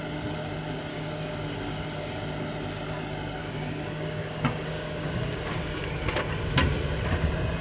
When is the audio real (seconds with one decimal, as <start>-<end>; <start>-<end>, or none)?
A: 0.0-0.9; 2.1-3.4; 5.8-7.6